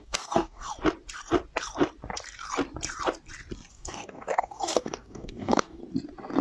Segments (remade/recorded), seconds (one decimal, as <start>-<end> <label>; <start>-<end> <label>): 0.0-0.7 remade; 0.7-3.7 recorded; 3.7-5.8 remade; 5.8-6.4 recorded